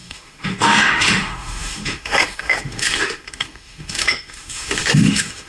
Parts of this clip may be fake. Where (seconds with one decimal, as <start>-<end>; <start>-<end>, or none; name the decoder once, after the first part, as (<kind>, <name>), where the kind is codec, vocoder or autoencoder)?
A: 0.0-5.5 (autoencoder, DAC-VAE)